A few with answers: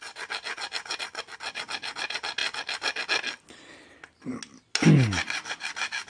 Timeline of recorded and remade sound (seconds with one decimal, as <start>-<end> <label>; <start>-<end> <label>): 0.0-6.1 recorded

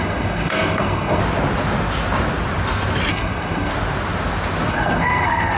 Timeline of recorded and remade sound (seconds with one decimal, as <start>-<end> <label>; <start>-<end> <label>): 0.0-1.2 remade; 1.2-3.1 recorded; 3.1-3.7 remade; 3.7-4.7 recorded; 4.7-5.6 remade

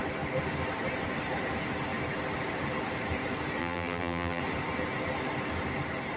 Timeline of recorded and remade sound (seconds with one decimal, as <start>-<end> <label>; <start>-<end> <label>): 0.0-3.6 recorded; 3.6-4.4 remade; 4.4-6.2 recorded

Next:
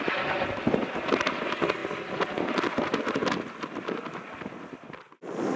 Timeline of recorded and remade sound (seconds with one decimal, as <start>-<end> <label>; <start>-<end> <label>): 0.0-5.6 recorded

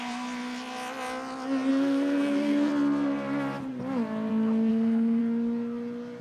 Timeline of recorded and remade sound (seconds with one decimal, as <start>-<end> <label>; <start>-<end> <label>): 0.0-1.7 recorded; 1.7-2.7 remade; 2.7-4.7 recorded; 4.7-5.2 remade; 5.2-6.2 recorded

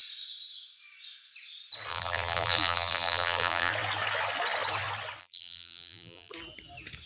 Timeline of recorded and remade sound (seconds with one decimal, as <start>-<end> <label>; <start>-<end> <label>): 0.0-1.9 recorded; 1.9-3.7 remade; 3.7-5.2 recorded; 5.2-6.3 remade; 6.3-7.1 recorded